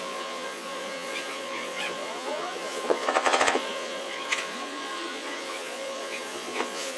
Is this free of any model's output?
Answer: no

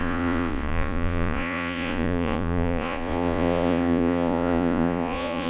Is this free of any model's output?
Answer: no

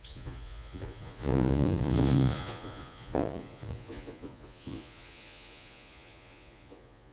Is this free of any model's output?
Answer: no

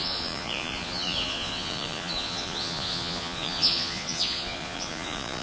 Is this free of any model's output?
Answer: no